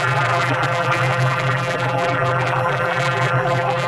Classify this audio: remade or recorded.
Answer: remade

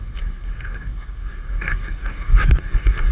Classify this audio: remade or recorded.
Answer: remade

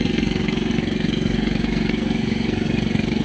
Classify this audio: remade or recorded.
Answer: remade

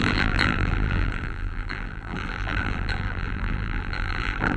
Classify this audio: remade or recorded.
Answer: remade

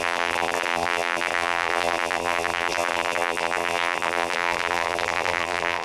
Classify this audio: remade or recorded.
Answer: remade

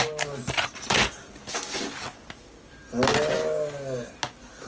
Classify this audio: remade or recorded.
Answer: recorded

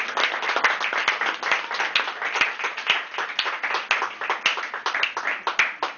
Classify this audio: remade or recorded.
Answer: recorded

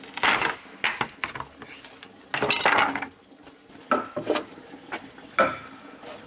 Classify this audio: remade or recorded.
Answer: recorded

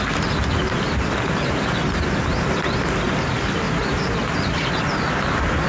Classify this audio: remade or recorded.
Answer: recorded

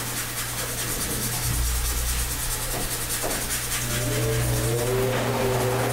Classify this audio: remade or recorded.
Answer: recorded